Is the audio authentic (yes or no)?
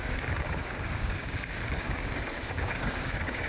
no